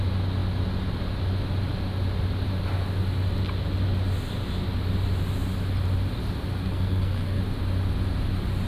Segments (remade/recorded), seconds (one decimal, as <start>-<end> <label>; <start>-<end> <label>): 0.0-6.6 recorded; 6.6-7.4 remade; 7.4-8.7 recorded